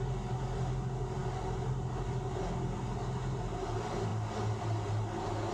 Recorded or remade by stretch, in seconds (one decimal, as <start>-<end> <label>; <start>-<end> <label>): 0.0-5.5 recorded